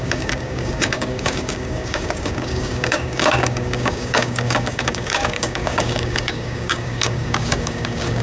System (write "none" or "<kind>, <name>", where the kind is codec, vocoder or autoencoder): codec, DAC